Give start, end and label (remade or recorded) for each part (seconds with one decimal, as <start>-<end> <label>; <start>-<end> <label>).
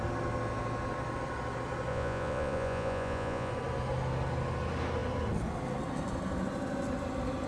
0.0-1.9 recorded; 1.9-3.5 remade; 3.5-7.5 recorded